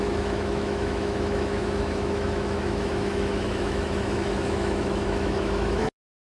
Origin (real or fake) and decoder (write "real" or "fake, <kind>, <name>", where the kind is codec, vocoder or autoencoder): fake, autoencoder, DAC-VAE